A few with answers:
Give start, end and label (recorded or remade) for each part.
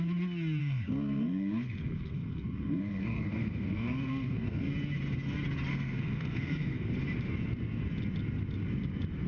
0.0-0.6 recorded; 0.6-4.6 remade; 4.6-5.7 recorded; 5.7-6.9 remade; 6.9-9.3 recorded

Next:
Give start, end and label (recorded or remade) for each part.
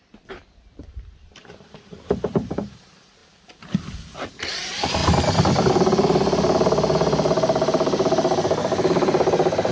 0.0-3.2 remade; 3.2-4.3 recorded; 4.3-5.0 remade; 5.0-9.7 recorded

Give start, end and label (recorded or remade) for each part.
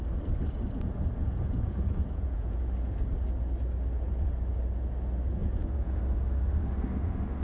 0.0-1.2 recorded; 1.2-2.7 remade; 2.7-5.4 recorded; 5.4-6.0 remade; 6.0-7.4 recorded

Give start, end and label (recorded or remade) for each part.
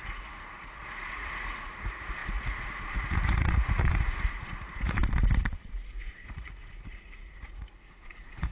0.0-5.0 remade; 5.0-5.9 recorded; 5.9-8.5 remade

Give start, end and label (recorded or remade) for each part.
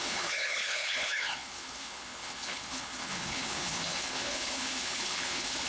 0.0-5.7 remade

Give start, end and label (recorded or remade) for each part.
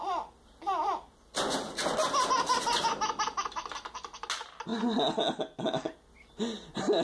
0.0-7.0 recorded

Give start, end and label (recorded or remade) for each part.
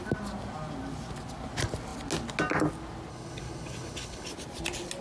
0.0-3.1 recorded; 3.1-4.3 remade; 4.3-5.0 recorded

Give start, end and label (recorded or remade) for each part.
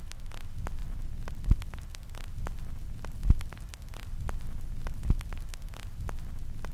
0.0-0.8 recorded; 0.8-2.3 remade; 2.3-3.2 recorded; 3.2-6.1 remade; 6.1-6.7 recorded